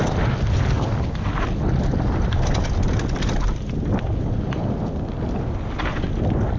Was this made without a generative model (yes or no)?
yes